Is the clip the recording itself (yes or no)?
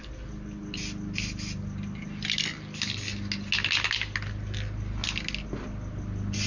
yes